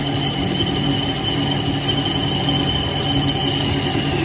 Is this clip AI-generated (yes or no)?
no